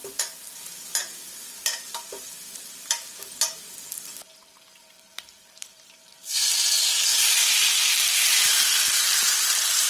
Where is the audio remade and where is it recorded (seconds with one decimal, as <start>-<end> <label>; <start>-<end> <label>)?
0.0-0.5 recorded; 0.5-3.1 remade; 3.1-5.2 recorded; 5.2-7.1 remade; 7.1-7.7 recorded; 7.7-9.9 remade

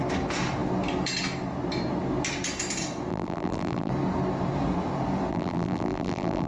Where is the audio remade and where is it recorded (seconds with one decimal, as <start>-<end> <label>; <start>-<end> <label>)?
0.0-3.1 recorded; 3.1-3.9 remade; 3.9-5.3 recorded; 5.3-6.5 remade

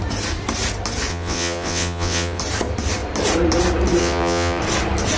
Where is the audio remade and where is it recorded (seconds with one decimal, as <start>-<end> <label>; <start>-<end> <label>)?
0.0-1.1 recorded; 1.1-2.4 remade; 2.4-4.0 recorded; 4.0-4.6 remade; 4.6-5.2 recorded

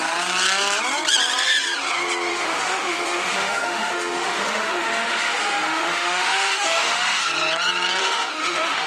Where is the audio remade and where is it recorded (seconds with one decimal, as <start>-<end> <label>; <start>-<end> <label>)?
0.0-2.3 recorded; 2.3-7.2 remade; 7.2-8.0 recorded; 8.0-8.9 remade

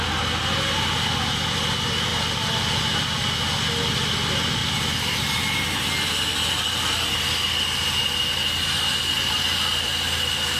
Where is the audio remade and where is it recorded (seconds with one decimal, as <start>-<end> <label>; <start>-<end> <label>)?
0.0-2.1 recorded; 2.1-2.8 remade; 2.8-4.6 recorded; 4.6-5.9 remade; 5.9-10.6 recorded

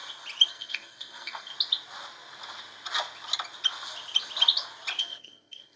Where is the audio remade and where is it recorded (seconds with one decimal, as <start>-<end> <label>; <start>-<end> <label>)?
0.0-0.5 recorded; 0.5-1.5 remade; 1.5-5.0 recorded; 5.0-5.8 remade